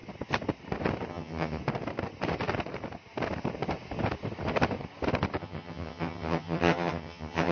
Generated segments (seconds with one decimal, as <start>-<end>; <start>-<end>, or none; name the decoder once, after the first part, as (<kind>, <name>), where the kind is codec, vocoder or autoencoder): 1.1-1.6 (vocoder, HiFi-GAN); 5.4-7.5